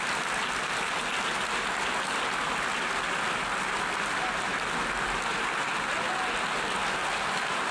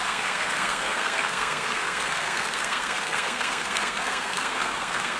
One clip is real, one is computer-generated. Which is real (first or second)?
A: first